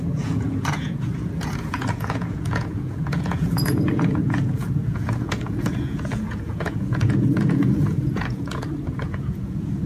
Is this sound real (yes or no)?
no